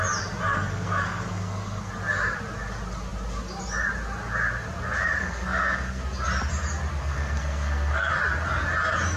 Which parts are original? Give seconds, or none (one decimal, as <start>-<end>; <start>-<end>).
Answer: 0.0-0.5; 1.9-5.2; 6.0-7.0; 8.1-9.2